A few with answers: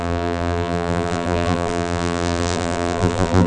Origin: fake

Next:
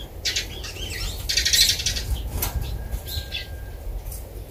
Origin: real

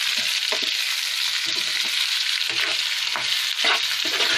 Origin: real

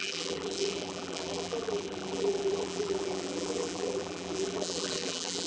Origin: fake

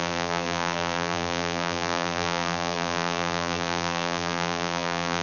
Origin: fake